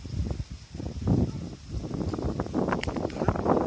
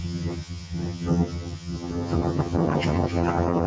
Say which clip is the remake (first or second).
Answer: second